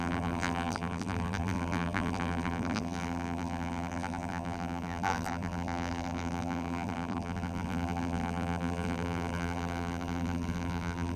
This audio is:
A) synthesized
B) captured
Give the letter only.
A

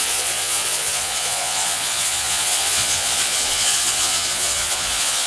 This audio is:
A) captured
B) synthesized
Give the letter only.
B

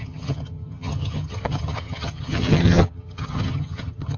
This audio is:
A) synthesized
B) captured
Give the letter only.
A